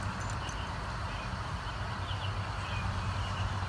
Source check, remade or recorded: recorded